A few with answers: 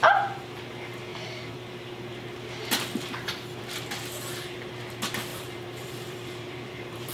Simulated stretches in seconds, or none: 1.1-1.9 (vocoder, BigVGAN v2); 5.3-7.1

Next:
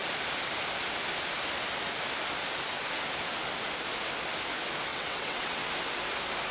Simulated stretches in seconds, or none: 4.9-5.7 (vocoder, WaveNeXt)